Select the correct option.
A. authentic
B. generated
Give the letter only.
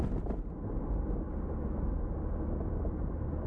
A